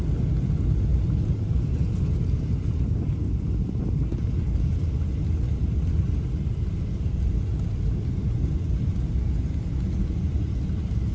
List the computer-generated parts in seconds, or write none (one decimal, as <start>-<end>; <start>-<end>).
0.9-3.2; 5.6-9.0